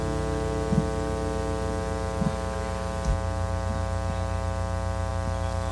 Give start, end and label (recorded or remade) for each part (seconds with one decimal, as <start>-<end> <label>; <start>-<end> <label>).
0.0-5.7 recorded

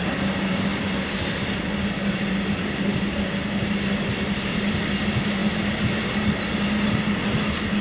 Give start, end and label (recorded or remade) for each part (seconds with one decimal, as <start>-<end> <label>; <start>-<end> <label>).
0.0-7.8 recorded

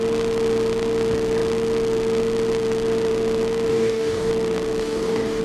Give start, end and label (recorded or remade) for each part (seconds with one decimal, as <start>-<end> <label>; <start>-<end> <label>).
0.0-3.7 recorded; 3.7-4.3 remade; 4.3-4.8 recorded; 4.8-5.4 remade

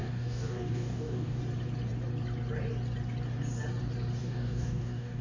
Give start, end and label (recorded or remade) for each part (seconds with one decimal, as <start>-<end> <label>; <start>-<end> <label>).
0.0-1.4 remade; 1.4-4.2 recorded; 4.2-5.2 remade

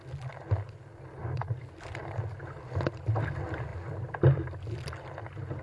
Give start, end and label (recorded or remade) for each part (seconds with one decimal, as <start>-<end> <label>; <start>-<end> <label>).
0.0-5.6 recorded

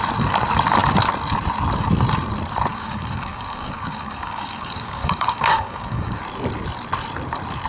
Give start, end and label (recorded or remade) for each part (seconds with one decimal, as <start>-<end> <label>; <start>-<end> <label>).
0.0-2.7 recorded; 2.7-6.2 remade; 6.2-7.7 recorded

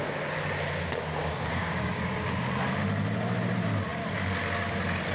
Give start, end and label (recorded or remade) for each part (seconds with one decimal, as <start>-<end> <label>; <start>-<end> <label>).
0.0-1.2 recorded; 1.2-2.4 remade; 2.4-5.1 recorded